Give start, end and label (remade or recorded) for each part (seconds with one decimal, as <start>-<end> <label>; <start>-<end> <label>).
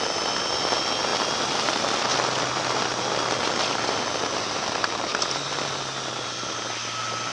0.0-7.3 recorded